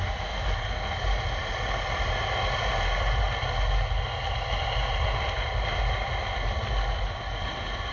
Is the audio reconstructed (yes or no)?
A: no